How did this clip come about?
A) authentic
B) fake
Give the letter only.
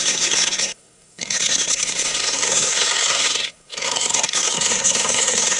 B